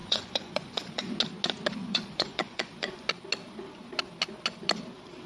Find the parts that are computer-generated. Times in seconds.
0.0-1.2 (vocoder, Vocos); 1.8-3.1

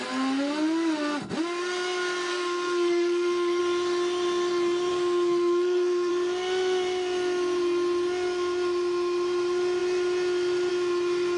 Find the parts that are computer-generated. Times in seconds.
2.3-3.6 (codec, SNAC); 4.9-6.1

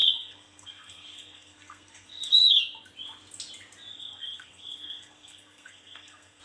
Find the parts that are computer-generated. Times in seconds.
0.0-2.6 (codec, SNAC); 3.9-6.4

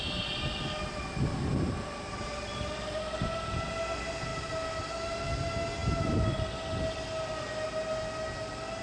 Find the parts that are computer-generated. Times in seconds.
none

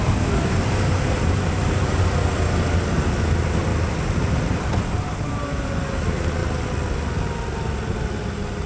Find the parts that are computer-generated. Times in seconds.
none